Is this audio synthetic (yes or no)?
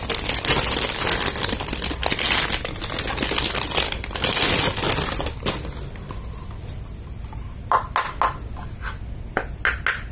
no